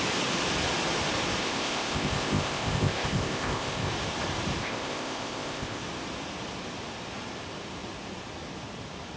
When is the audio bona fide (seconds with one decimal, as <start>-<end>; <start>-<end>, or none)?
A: 0.0-1.4; 3.9-4.6; 5.8-9.2